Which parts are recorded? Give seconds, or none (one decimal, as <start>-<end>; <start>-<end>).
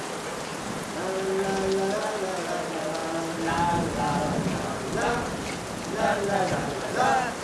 0.0-0.5; 1.0-7.4